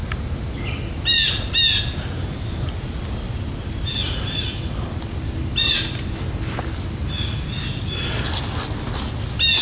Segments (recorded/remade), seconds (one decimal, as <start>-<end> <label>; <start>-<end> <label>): 0.0-9.6 recorded